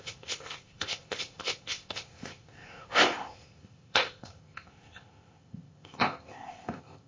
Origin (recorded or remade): remade